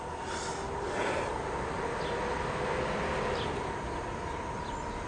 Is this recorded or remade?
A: recorded